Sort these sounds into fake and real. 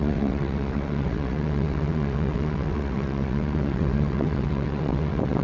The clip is fake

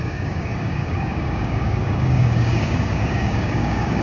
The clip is fake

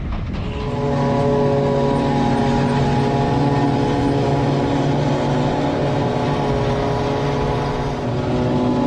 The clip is real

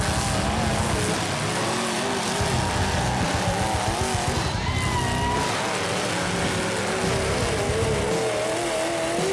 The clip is real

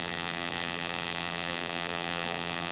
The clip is fake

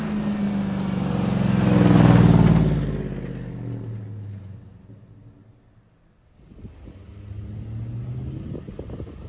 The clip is real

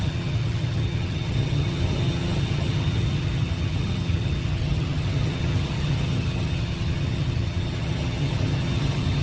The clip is fake